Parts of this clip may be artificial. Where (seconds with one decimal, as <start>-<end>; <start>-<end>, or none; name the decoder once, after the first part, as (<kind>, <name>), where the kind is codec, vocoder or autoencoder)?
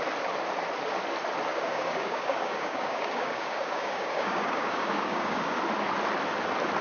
1.5-5.6 (codec, DAC)